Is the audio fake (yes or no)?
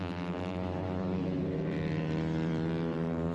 yes